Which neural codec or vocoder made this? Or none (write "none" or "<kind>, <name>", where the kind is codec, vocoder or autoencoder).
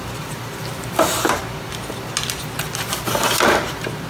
none